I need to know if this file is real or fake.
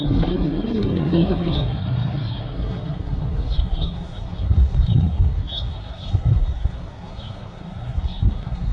fake